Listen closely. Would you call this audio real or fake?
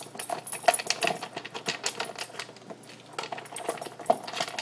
real